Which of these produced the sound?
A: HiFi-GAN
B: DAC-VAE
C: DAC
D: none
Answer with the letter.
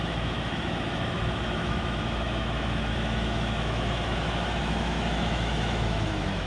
B